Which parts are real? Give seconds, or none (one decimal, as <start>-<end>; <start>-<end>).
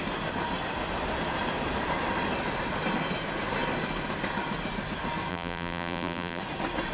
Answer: 0.0-5.3; 6.4-6.9